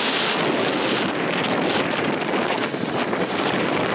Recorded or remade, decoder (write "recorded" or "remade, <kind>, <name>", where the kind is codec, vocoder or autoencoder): recorded